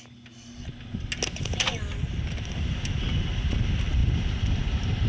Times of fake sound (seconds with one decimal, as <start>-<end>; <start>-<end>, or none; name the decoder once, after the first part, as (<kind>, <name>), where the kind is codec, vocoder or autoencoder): none